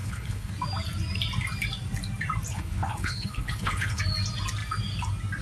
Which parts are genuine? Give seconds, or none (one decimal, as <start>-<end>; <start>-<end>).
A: 0.5-2.5; 4.0-5.4